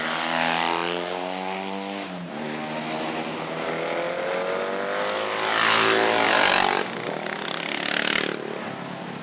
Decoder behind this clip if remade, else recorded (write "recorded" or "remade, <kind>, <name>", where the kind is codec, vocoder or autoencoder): recorded